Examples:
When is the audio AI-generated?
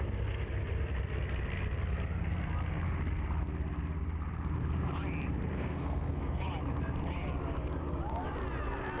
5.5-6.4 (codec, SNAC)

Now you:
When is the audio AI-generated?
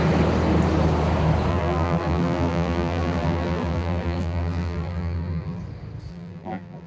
1.5-5.6 (vocoder, BigVGAN v2); 6.1-6.9